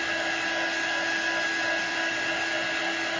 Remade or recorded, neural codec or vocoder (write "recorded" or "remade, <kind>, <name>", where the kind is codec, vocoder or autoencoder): recorded